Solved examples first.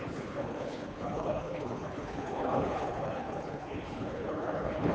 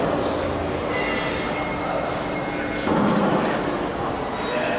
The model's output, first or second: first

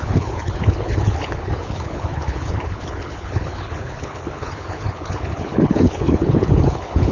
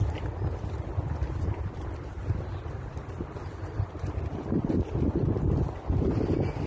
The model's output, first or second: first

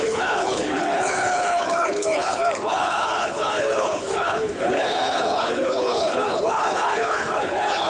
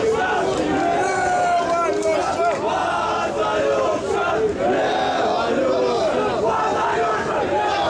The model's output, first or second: first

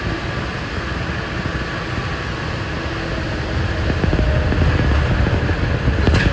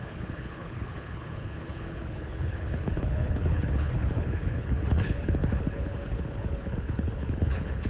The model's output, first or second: second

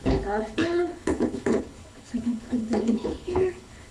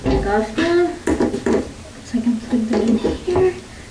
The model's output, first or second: first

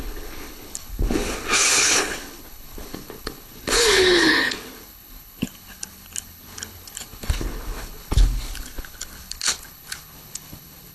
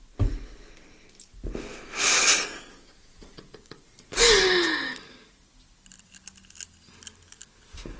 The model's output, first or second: first